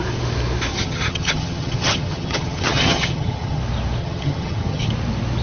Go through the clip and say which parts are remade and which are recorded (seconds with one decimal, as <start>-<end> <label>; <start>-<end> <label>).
0.0-0.7 recorded; 0.7-3.6 remade; 3.6-4.0 recorded; 4.0-4.9 remade; 4.9-5.4 recorded